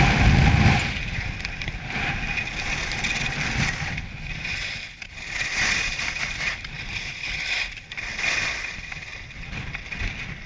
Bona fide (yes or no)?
yes